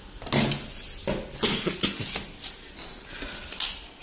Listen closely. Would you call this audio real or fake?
real